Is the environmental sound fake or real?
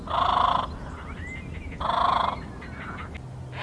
real